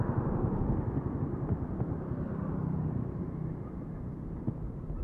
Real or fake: real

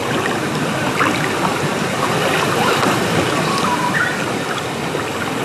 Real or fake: real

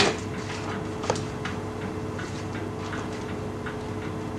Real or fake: fake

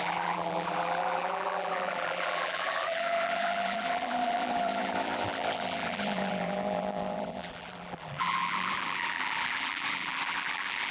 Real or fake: fake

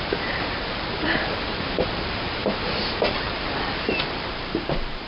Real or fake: fake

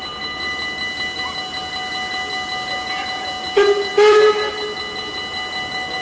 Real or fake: real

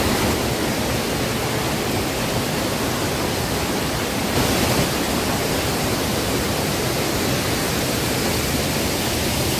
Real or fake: real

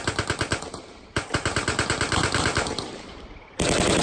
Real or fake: fake